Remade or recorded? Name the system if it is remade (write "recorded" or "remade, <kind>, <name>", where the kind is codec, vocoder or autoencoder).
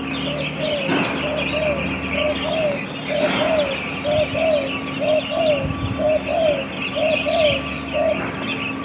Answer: recorded